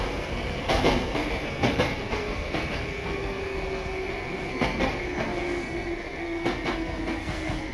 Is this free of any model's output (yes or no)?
no